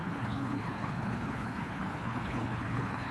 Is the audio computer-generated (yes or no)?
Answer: yes